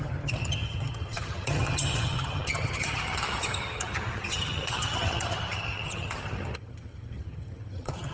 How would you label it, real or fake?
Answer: fake